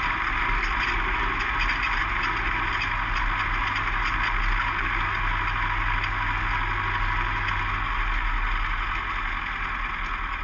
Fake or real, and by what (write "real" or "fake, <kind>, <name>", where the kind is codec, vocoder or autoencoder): real